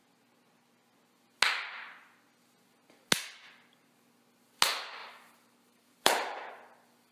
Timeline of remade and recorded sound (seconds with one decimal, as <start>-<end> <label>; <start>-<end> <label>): 0.0-5.0 recorded; 5.0-6.5 remade; 6.5-7.1 recorded